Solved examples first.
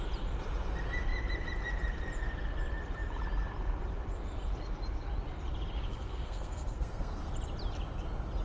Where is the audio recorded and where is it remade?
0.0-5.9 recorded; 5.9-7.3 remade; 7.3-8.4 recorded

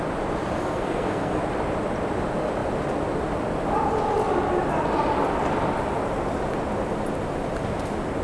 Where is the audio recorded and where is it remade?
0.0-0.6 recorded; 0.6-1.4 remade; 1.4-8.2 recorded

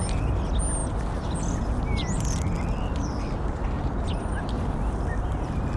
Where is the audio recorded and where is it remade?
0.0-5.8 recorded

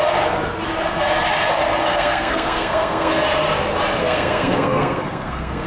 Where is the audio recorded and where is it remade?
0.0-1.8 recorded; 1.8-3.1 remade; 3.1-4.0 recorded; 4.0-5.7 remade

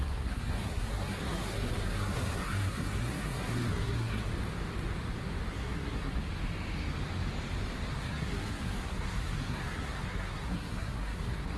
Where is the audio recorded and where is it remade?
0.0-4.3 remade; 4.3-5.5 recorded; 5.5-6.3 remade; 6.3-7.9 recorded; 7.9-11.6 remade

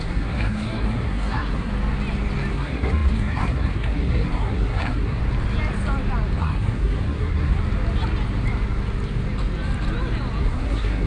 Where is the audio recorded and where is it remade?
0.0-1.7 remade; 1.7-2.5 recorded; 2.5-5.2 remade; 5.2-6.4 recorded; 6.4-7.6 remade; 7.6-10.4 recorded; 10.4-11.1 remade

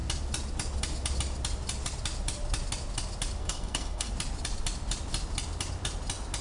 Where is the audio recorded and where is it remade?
0.0-3.4 recorded; 3.4-4.1 remade; 4.1-6.4 recorded

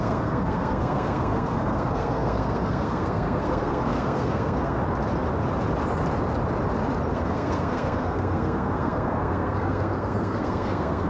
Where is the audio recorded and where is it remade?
0.0-4.8 remade; 4.8-7.1 recorded; 7.1-11.1 remade